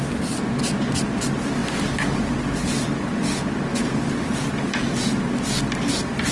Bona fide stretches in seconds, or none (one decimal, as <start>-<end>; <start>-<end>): 0.0-6.3